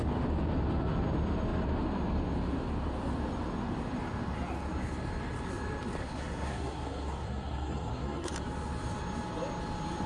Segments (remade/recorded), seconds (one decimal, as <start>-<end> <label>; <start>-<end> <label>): 0.0-6.0 recorded; 6.0-8.3 remade; 8.3-10.1 recorded